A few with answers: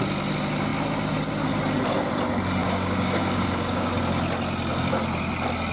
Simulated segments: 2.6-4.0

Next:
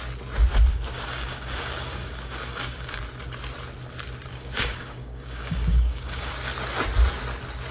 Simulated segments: 0.7-3.0; 4.3-6.3